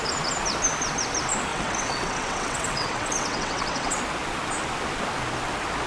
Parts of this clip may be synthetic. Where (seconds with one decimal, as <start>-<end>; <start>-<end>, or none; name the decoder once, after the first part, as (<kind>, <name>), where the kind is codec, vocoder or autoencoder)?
1.5-4.0 (vocoder, WaveNeXt)